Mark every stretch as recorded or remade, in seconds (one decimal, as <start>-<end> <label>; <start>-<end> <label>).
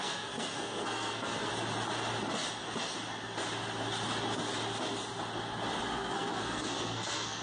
0.0-1.5 remade; 1.5-5.9 recorded; 5.9-7.4 remade